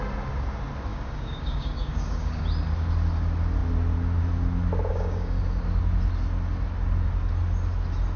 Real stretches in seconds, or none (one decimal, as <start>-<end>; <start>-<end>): 0.0-0.9; 2.4-4.9; 5.4-8.2